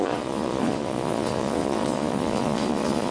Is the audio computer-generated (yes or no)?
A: yes